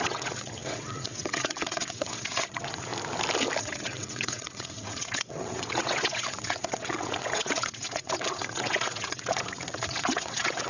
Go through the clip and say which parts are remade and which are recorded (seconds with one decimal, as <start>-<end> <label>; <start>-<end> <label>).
0.0-2.9 remade; 2.9-3.6 recorded; 3.6-10.7 remade